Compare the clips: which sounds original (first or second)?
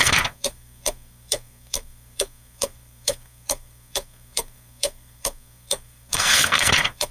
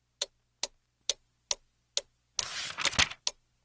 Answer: second